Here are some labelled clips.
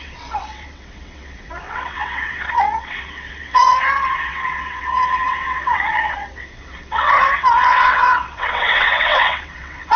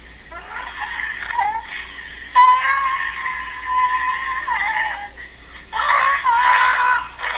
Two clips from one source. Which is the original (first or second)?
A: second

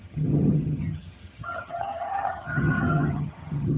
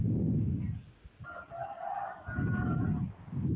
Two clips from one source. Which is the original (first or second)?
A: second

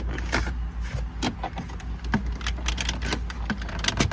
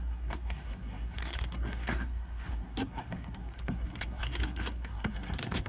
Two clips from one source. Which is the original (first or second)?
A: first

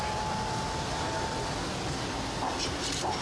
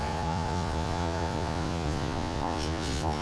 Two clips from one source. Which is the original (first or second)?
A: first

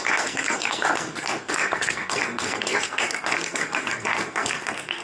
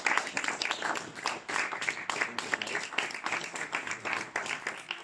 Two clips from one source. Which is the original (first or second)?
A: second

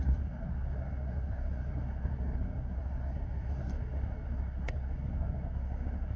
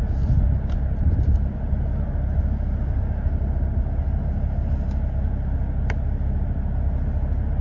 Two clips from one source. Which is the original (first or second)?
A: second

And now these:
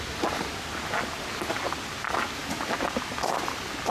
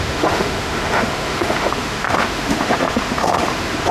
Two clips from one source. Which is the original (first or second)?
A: first